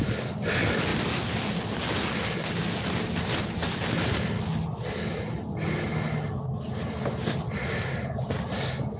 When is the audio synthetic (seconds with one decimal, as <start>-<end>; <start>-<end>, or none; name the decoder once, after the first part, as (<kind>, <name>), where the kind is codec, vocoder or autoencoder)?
none